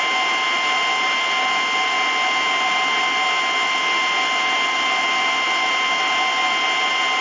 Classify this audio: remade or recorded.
recorded